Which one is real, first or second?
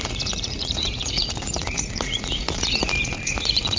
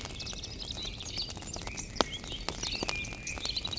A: second